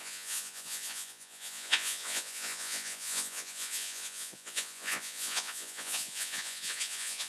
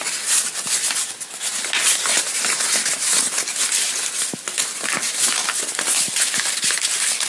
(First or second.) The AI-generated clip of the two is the first